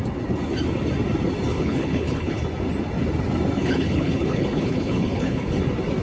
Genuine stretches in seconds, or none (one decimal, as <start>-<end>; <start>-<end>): 0.0-1.5; 2.4-3.6; 5.6-6.0